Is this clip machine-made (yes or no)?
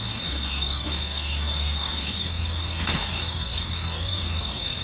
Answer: yes